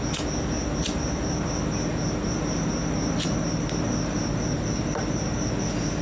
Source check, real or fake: real